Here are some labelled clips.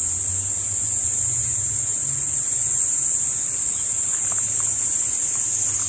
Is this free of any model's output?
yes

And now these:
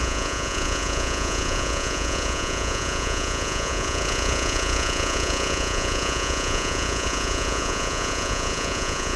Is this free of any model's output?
no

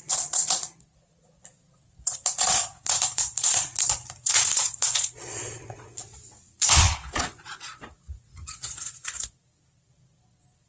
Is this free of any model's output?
no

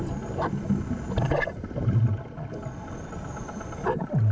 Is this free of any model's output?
yes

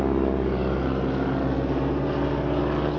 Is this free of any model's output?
yes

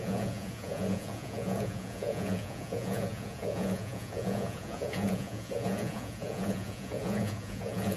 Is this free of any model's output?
no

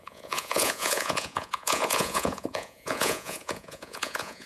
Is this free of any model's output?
no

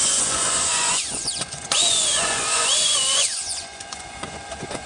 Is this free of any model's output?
no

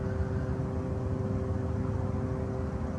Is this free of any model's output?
yes